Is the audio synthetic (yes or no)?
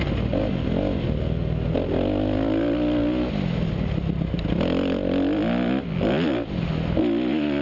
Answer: no